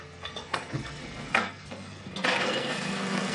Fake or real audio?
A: fake